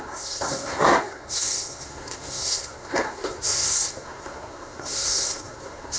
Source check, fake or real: fake